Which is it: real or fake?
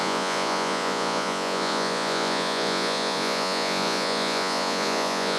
fake